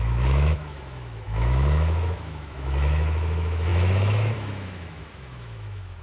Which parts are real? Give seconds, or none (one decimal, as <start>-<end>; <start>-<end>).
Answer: none